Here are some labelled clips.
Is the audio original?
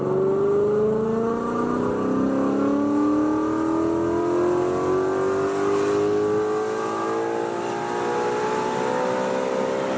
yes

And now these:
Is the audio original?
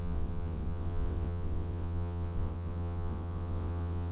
no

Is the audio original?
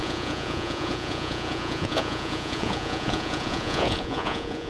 no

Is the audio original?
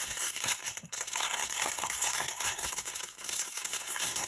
no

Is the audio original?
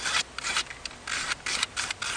yes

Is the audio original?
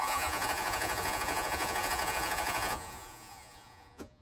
no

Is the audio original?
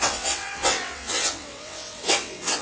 no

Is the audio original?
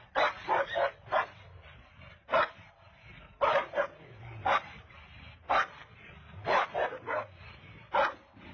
yes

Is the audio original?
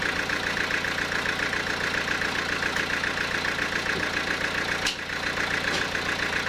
yes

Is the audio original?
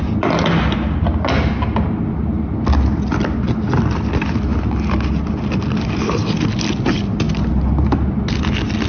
yes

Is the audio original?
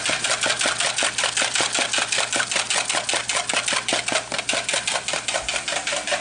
yes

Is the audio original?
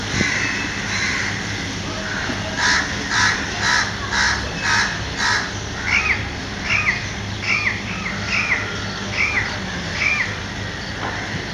yes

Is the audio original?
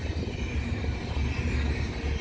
yes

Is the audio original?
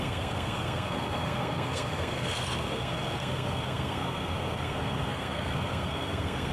no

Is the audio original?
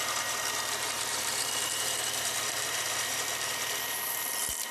no